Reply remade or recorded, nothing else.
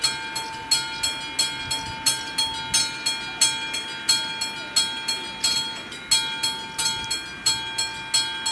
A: recorded